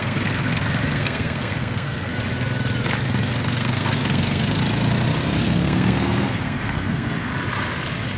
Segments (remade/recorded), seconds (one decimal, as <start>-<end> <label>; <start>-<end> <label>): 0.0-2.1 remade; 2.1-3.0 recorded; 3.0-4.6 remade; 4.6-5.4 recorded; 5.4-7.3 remade; 7.3-8.2 recorded